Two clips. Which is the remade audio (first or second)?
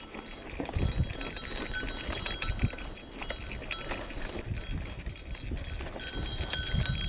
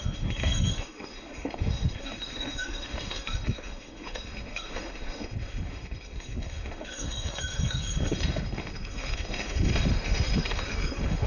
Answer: second